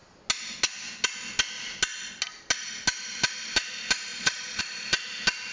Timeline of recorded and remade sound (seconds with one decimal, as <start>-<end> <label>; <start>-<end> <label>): 0.0-4.1 recorded; 4.1-4.6 remade; 4.6-5.5 recorded